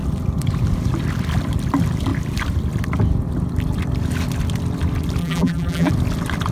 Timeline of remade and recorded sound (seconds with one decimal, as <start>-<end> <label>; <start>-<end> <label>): 0.0-5.2 recorded; 5.2-5.9 remade; 5.9-6.5 recorded